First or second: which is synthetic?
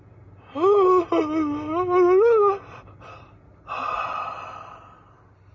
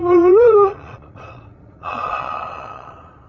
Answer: second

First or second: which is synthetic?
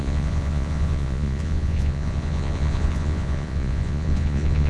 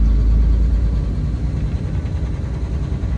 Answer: first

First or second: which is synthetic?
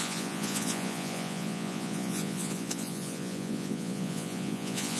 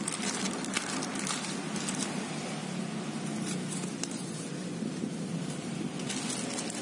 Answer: first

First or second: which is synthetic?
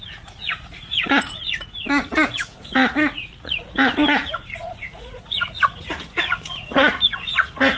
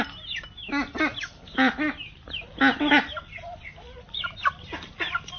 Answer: first